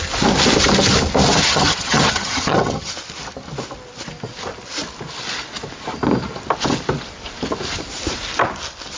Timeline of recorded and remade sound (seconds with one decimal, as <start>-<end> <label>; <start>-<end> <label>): 0.0-1.4 recorded; 1.4-2.9 remade; 2.9-9.0 recorded